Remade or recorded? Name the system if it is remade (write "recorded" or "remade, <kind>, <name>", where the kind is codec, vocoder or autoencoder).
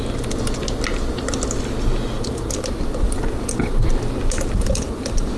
recorded